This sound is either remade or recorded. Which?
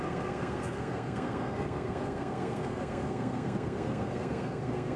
remade